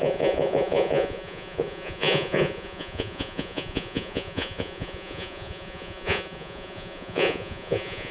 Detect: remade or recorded remade